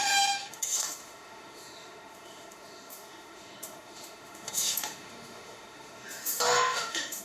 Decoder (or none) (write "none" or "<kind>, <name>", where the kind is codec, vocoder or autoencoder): autoencoder, DAC-VAE